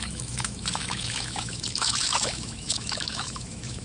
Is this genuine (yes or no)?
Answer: no